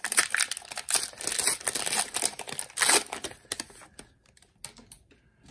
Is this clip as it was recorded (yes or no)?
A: yes